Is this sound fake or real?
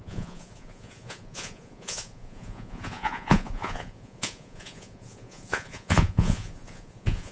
fake